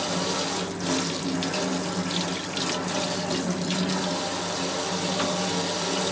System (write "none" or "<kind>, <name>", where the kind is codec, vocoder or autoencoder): none